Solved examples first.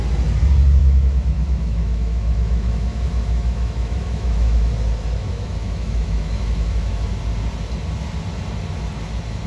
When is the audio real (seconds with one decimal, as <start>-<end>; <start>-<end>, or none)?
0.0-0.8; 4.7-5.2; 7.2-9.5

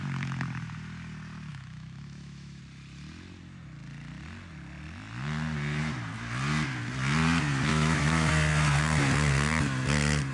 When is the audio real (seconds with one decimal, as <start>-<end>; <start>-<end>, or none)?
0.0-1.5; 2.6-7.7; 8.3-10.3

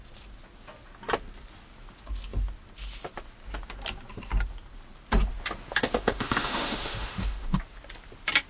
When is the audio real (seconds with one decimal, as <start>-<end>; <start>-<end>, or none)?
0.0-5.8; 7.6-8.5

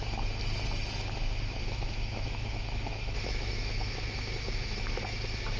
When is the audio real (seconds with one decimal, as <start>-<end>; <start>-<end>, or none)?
0.0-1.6; 5.0-5.6